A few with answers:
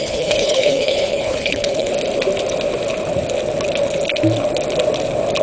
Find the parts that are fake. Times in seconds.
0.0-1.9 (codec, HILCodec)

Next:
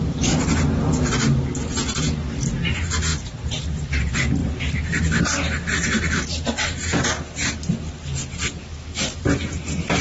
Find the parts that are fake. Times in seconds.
8.6-9.2 (autoencoder, DAC-VAE)

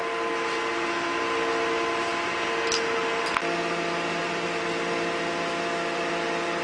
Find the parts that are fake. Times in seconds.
4.2-6.1 (vocoder, BigVGAN v2)

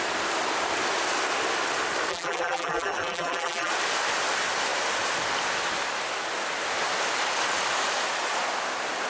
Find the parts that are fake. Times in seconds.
2.1-3.7 (vocoder, BigVGAN v2)

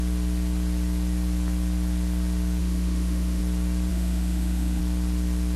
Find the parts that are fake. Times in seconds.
2.6-3.4 (autoencoder, DAC-VAE); 3.9-4.8